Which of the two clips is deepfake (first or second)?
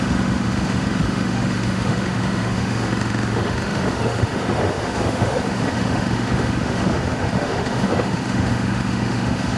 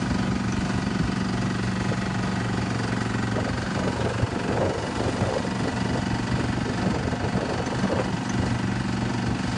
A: first